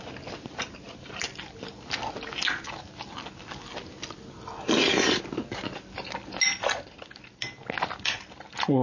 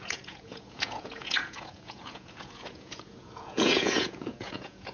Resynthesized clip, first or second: second